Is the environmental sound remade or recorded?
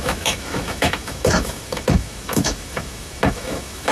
remade